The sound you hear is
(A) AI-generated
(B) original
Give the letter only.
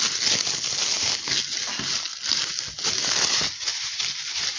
B